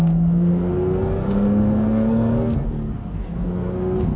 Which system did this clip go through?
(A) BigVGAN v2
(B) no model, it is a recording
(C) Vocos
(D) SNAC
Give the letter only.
D